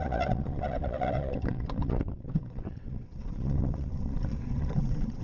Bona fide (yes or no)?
no